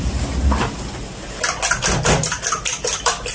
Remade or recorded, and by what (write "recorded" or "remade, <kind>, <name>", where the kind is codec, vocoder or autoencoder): recorded